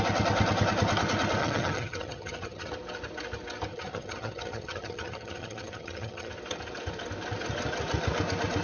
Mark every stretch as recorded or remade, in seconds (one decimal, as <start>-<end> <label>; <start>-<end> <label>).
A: 0.0-1.4 recorded; 1.4-2.7 remade; 2.7-3.7 recorded; 3.7-6.3 remade; 6.3-8.6 recorded